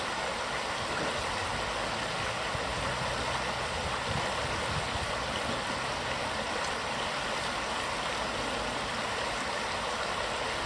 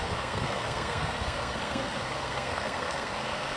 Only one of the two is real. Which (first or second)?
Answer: first